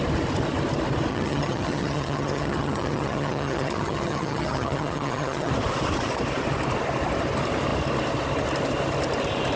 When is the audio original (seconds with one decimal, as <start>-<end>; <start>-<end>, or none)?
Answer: 0.0-1.1; 5.5-9.6